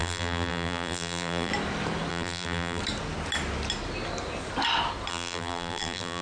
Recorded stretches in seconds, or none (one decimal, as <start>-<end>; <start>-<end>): 1.5-2.1; 2.8-5.1